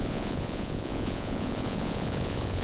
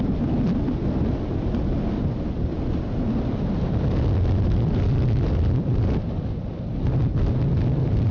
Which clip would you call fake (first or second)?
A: first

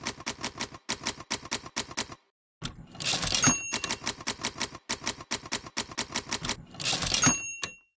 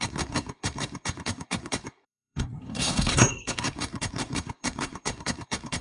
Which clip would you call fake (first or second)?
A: second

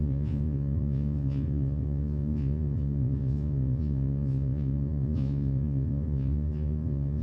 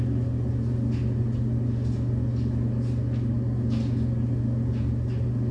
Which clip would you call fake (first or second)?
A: first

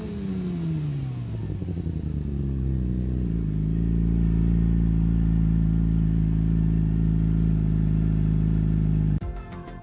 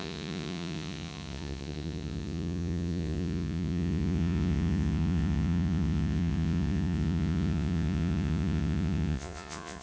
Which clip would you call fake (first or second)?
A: second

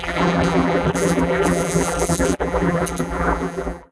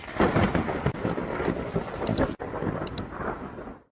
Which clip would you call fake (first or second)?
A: first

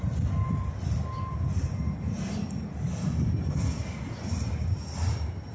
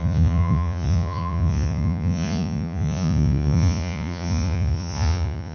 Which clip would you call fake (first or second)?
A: second